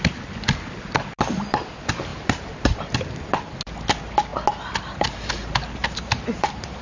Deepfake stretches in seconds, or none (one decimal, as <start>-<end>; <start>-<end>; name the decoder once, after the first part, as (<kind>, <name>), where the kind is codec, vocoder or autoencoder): 2.1-2.9 (vocoder, BigVGAN v2); 5.8-6.8